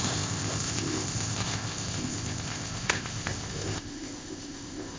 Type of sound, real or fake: fake